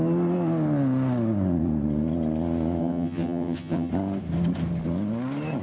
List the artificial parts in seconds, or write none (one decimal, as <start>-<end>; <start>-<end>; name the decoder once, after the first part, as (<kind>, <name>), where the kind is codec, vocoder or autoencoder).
2.8-3.9 (vocoder, HiFi-GAN)